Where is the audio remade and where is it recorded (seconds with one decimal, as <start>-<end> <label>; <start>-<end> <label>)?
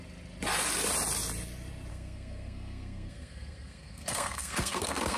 0.0-1.9 recorded; 1.9-5.2 remade